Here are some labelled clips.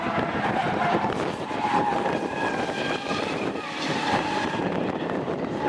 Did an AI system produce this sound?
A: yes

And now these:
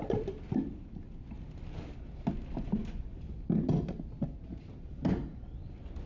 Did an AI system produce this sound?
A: no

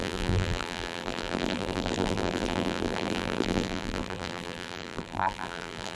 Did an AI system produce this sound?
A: yes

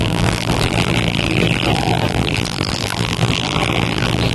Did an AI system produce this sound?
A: yes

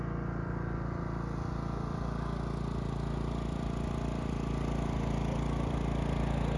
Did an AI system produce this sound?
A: no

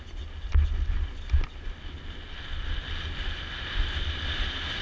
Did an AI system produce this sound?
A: no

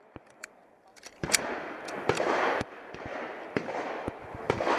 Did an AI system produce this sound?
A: yes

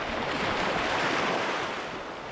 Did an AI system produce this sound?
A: no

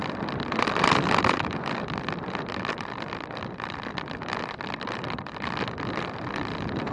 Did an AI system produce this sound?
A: yes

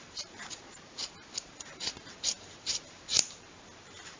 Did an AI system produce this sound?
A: yes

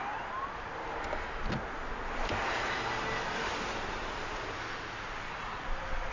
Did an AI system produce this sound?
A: no